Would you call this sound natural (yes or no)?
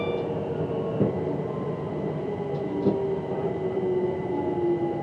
yes